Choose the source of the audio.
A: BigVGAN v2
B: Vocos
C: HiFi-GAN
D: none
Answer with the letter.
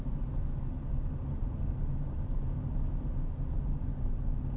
D